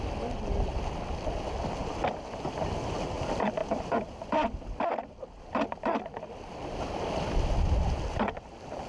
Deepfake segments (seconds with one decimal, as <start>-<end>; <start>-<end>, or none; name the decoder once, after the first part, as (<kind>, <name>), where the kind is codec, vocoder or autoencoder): none